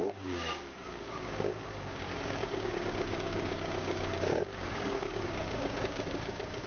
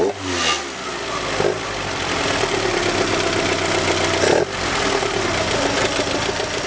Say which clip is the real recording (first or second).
second